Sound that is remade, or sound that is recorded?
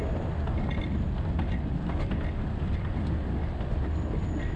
recorded